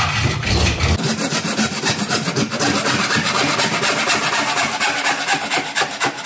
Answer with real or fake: real